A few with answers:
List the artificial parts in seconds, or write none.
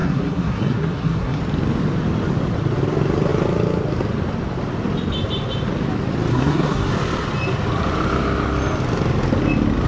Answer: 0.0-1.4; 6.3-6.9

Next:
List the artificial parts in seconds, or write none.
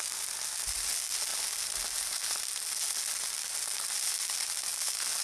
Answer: none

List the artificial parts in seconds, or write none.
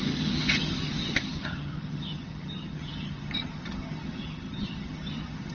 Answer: 0.0-5.5